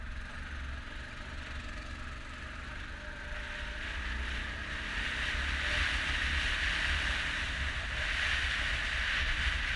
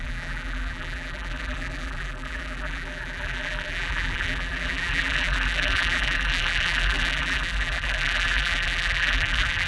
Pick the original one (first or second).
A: first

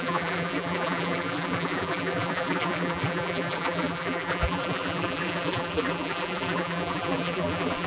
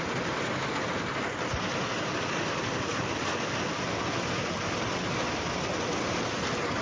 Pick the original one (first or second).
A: second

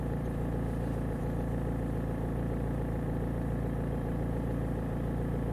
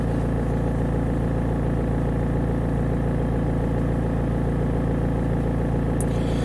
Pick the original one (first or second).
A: second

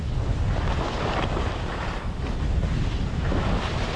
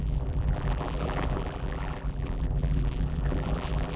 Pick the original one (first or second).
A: first